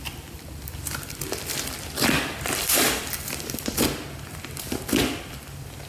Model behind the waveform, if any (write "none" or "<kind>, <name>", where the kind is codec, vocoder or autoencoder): vocoder, BigVGAN v2